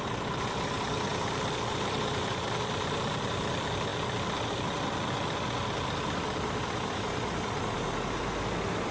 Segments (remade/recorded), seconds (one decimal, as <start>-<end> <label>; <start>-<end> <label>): 0.0-1.1 recorded; 1.1-2.6 remade; 2.6-8.9 recorded

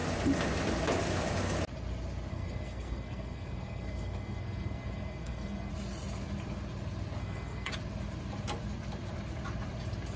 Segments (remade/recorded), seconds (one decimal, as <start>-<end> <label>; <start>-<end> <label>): 0.0-2.3 recorded; 2.3-5.7 remade; 5.7-7.2 recorded; 7.2-7.7 remade; 7.7-10.2 recorded

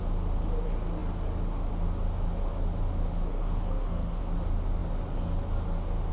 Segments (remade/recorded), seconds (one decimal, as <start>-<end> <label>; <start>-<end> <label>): 0.0-3.3 recorded; 3.3-4.2 remade; 4.2-6.1 recorded

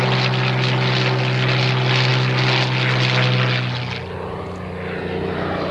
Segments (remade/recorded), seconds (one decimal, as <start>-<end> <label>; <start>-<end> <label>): 0.0-5.7 recorded

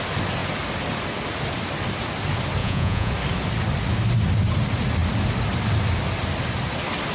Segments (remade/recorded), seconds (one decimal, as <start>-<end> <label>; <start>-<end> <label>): 0.0-2.6 recorded; 2.6-3.1 remade; 3.1-7.1 recorded

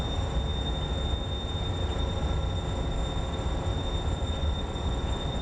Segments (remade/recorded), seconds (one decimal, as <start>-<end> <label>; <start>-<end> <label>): 0.0-4.2 recorded; 4.2-5.4 remade